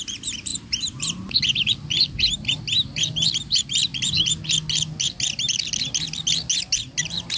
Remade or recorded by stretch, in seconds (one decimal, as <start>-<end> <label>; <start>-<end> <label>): 0.0-7.4 recorded